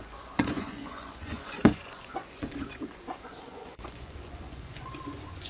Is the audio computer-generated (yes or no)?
yes